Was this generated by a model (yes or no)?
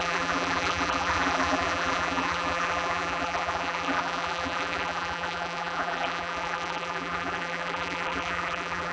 yes